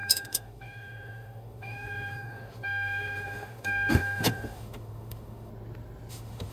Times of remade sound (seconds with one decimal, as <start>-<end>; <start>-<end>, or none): 0.0-5.5; 6.1-6.5

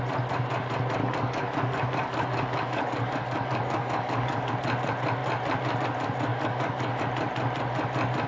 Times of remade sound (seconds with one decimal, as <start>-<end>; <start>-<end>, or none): 1.0-4.5; 6.3-7.0

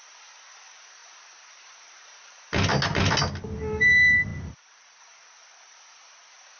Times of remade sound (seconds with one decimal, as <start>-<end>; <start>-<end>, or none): none

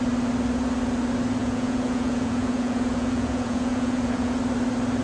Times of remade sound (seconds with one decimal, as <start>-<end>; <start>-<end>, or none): 1.4-4.4

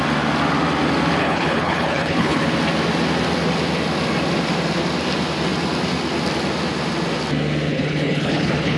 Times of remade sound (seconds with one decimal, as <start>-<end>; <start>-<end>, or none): 1.2-2.4; 7.7-8.8